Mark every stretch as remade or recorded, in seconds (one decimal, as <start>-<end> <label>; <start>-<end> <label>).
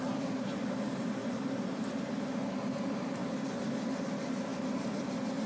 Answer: 0.0-3.2 remade; 3.2-4.0 recorded; 4.0-5.5 remade